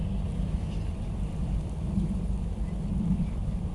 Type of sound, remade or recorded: recorded